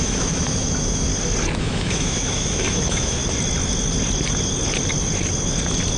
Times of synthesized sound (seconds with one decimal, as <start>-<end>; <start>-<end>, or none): 0.0-1.1; 1.6-3.2